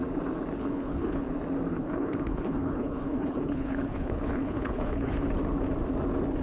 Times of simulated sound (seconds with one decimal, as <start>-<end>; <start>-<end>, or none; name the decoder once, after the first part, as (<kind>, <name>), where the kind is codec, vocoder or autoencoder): 0.6-1.2 (codec, HILCodec); 1.7-5.1